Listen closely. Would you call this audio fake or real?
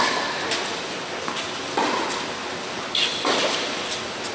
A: real